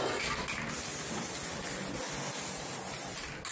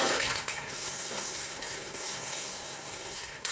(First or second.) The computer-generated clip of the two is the second